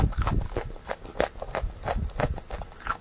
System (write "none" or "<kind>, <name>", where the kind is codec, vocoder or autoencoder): none